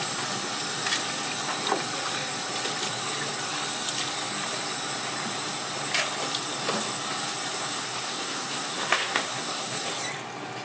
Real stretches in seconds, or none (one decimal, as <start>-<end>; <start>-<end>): 0.0-7.8; 9.9-10.6